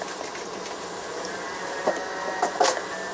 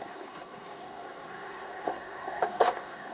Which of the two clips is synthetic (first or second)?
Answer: second